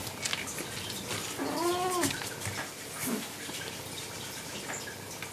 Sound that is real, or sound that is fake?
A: real